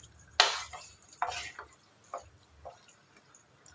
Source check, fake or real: real